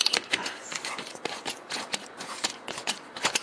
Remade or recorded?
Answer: remade